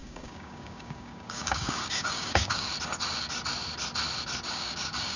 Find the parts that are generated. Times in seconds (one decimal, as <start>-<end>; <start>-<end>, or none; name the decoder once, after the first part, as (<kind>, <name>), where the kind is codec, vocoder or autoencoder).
0.0-2.7 (codec, DAC); 4.5-5.2